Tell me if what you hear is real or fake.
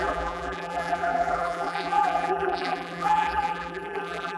fake